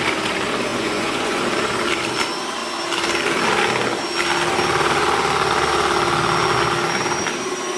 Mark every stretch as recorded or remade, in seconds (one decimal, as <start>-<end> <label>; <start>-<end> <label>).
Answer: 0.0-0.7 recorded; 0.7-1.4 remade; 1.4-7.8 recorded

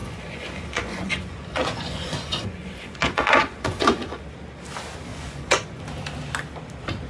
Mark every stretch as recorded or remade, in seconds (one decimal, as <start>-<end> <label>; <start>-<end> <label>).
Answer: 0.0-4.2 remade; 4.2-5.1 recorded; 5.1-5.8 remade; 5.8-7.1 recorded

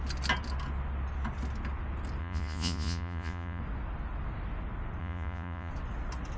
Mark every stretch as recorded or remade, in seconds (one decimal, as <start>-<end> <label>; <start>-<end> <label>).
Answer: 0.0-2.2 recorded; 2.2-3.6 remade; 3.6-5.0 recorded; 5.0-5.7 remade; 5.7-6.4 recorded

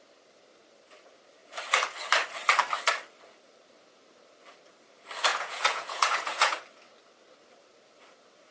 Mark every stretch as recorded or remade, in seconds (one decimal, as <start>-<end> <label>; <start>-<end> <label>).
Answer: 0.0-5.3 recorded; 5.3-6.6 remade; 6.6-8.5 recorded

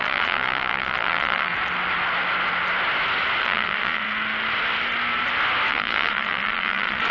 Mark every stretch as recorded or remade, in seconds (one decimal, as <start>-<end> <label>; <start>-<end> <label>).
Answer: 0.0-1.5 remade; 1.5-3.4 recorded; 3.4-4.0 remade; 4.0-5.7 recorded; 5.7-7.1 remade